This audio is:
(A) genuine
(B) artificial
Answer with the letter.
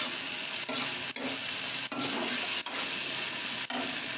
A